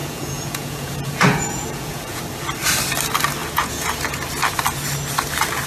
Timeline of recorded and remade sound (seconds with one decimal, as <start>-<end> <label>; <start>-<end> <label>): 0.0-2.2 remade; 2.2-3.4 recorded; 3.4-3.9 remade; 3.9-5.7 recorded